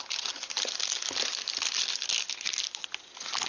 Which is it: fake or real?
real